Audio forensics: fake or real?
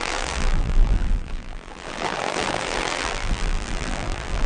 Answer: fake